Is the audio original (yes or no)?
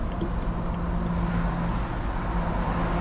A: yes